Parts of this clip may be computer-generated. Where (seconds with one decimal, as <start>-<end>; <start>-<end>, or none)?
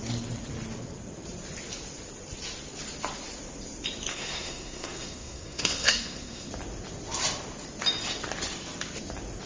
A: 4.1-6.5